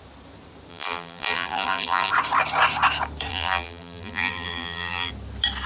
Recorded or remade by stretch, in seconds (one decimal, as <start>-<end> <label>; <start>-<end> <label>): 0.0-0.7 recorded; 0.7-2.1 remade; 2.1-3.3 recorded; 3.3-5.1 remade; 5.1-5.7 recorded

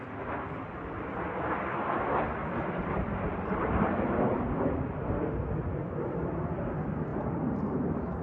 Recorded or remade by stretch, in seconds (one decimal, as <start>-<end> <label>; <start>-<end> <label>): 0.0-2.4 recorded; 2.4-4.4 remade; 4.4-7.1 recorded; 7.1-8.2 remade